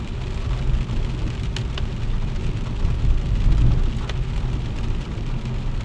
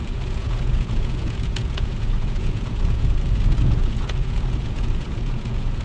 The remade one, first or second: second